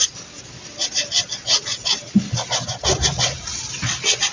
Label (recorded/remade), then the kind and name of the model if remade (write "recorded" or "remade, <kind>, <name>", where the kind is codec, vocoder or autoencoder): recorded